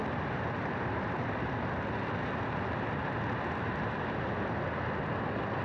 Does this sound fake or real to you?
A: real